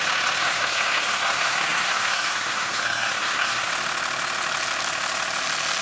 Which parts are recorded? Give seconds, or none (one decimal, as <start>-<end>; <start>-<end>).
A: 0.0-0.4; 3.7-5.8